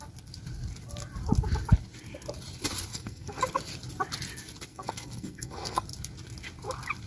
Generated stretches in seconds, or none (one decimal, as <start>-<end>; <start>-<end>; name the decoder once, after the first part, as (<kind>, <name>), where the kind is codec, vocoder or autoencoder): 2.9-3.4 (codec, SNAC); 4.7-5.8